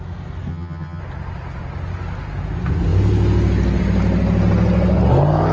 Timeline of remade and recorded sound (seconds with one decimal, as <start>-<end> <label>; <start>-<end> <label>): 0.0-0.5 recorded; 0.5-1.0 remade; 1.0-5.5 recorded